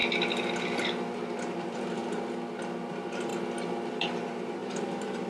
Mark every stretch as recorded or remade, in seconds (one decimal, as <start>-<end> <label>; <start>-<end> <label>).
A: 0.0-1.4 recorded; 1.4-2.0 remade; 2.0-2.9 recorded; 2.9-3.3 remade; 3.3-3.9 recorded; 3.9-5.3 remade

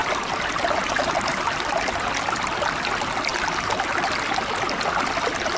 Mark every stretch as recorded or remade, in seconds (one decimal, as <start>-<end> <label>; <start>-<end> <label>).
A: 0.0-5.6 recorded

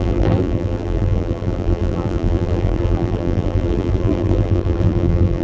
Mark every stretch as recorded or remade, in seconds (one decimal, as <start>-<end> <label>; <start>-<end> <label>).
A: 0.0-5.4 remade

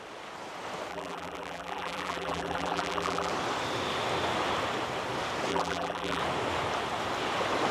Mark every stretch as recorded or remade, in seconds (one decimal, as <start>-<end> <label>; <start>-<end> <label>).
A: 0.0-0.9 recorded; 0.9-3.3 remade; 3.3-5.5 recorded; 5.5-6.2 remade; 6.2-7.7 recorded

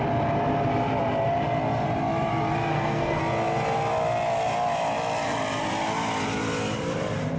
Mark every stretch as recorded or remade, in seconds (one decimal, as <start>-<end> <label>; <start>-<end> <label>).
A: 0.0-2.7 recorded; 2.7-3.2 remade; 3.2-7.4 recorded

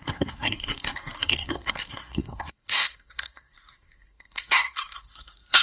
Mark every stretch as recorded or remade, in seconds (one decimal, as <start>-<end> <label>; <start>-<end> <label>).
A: 0.0-5.6 remade

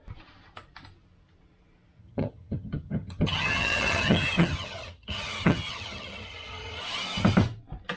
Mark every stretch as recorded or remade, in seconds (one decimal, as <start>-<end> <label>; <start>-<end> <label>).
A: 0.0-2.0 recorded; 2.0-6.8 remade; 6.8-8.0 recorded